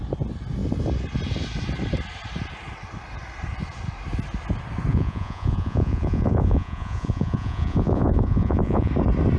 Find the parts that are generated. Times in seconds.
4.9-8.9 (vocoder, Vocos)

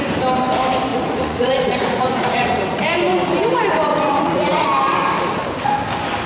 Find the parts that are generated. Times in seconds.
0.9-2.8 (vocoder, Vocos); 3.9-4.6

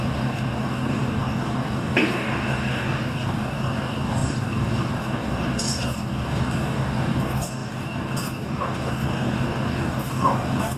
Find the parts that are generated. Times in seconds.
0.0-10.8 (codec, DAC)